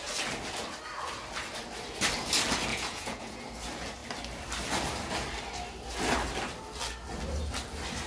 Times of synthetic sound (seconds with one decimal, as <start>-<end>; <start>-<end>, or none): 2.7-3.4